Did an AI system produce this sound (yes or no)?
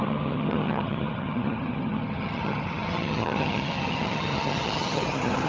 yes